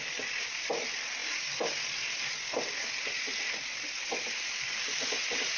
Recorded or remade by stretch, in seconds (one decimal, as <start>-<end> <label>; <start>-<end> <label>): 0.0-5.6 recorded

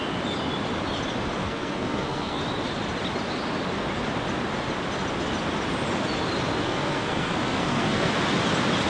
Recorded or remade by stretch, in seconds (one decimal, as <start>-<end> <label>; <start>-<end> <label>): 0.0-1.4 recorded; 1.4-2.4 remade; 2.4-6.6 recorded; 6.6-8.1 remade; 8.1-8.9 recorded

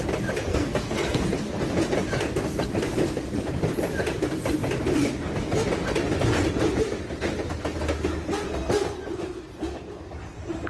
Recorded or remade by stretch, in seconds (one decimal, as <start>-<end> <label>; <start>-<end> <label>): 0.0-0.5 recorded; 0.5-1.2 remade; 1.2-10.7 recorded

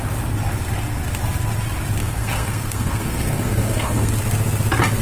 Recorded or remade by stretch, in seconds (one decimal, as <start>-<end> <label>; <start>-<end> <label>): 0.0-2.0 recorded; 2.0-4.1 remade; 4.1-5.0 recorded

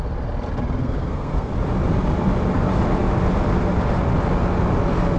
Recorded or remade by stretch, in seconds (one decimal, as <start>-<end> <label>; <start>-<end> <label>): 0.0-0.8 recorded; 0.8-1.5 remade; 1.5-5.2 recorded